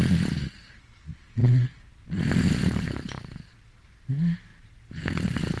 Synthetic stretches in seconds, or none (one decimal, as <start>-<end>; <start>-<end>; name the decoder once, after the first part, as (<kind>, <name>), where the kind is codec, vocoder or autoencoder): none